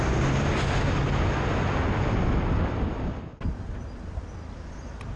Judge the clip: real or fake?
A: real